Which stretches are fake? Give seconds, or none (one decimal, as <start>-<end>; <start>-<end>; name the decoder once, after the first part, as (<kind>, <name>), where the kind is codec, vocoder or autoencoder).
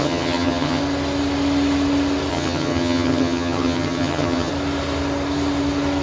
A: 0.0-0.8 (vocoder, HiFi-GAN); 2.3-4.5